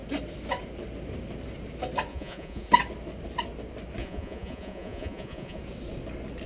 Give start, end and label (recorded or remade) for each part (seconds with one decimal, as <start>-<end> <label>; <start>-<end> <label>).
0.0-2.1 recorded; 2.1-2.7 remade; 2.7-4.0 recorded; 4.0-5.6 remade; 5.6-6.5 recorded